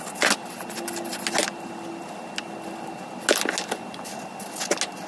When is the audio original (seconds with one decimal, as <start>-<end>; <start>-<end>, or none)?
0.0-5.1